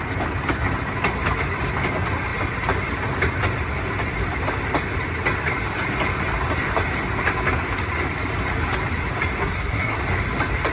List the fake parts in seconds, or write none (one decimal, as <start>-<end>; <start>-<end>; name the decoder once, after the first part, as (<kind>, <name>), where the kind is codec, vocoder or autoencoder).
9.4-10.0 (codec, SNAC)